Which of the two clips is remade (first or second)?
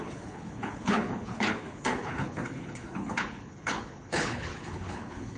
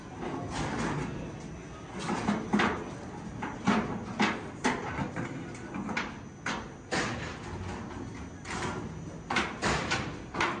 first